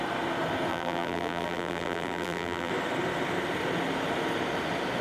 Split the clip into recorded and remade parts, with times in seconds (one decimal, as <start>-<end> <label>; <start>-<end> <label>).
0.0-0.7 recorded; 0.7-2.7 remade; 2.7-5.0 recorded